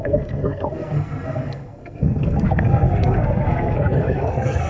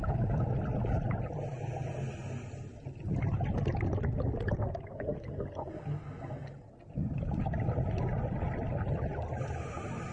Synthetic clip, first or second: first